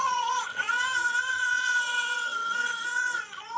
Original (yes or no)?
no